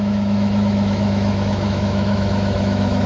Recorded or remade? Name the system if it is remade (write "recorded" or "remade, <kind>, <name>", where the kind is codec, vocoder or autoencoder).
remade, autoencoder, DAC-VAE